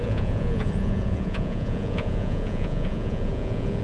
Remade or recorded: remade